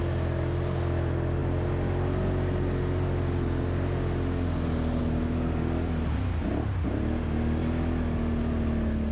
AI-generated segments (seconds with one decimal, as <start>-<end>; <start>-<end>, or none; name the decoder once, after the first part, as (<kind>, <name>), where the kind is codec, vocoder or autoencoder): none